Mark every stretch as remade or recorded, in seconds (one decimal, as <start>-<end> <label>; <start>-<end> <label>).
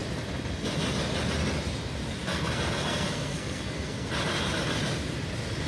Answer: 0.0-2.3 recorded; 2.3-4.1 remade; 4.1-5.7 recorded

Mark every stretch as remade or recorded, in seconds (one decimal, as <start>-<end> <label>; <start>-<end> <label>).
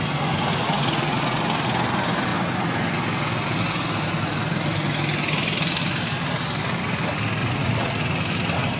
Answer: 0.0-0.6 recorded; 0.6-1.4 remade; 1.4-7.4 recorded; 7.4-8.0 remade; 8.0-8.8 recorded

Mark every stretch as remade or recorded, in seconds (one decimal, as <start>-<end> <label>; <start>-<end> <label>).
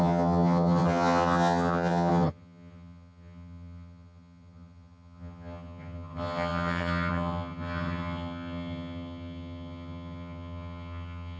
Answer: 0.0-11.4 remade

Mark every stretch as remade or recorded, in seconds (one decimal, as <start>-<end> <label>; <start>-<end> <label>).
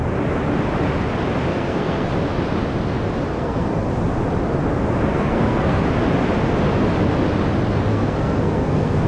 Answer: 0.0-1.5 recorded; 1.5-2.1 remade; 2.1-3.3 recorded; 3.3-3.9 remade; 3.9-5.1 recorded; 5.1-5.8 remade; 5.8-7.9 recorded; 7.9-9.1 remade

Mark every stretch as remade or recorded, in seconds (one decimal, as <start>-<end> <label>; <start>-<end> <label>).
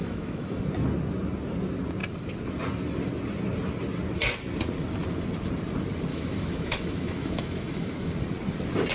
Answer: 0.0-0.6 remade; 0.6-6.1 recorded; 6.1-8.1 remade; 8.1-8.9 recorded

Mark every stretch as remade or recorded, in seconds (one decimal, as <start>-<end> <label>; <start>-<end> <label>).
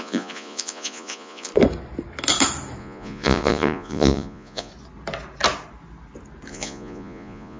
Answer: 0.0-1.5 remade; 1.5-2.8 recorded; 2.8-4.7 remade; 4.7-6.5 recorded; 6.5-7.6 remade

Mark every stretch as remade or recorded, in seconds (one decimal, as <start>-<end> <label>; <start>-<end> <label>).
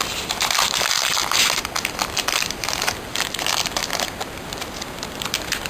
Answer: 0.0-1.2 remade; 1.2-1.9 recorded; 1.9-3.8 remade; 3.8-5.7 recorded